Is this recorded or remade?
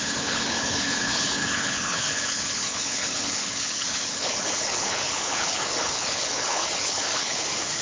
remade